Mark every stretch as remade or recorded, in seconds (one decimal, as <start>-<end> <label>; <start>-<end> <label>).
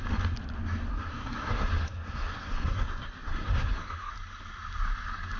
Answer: 0.0-0.9 recorded; 0.9-4.1 remade; 4.1-5.4 recorded